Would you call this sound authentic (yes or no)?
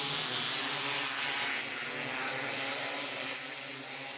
yes